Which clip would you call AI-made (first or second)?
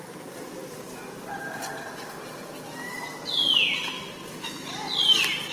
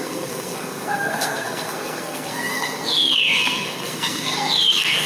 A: second